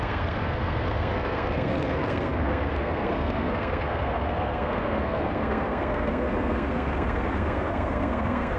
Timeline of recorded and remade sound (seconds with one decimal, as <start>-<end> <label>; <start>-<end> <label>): 0.0-8.6 remade